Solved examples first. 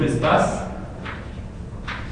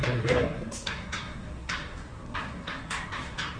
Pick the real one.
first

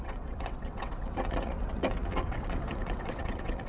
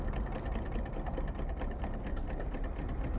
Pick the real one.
second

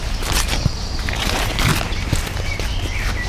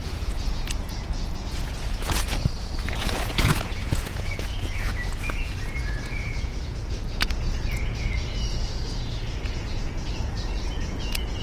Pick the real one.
first